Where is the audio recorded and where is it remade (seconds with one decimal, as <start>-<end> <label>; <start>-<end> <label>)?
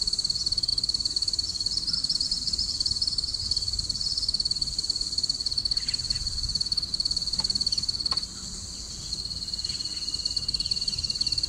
0.0-0.7 recorded; 0.7-5.6 remade; 5.6-8.3 recorded; 8.3-9.7 remade; 9.7-11.5 recorded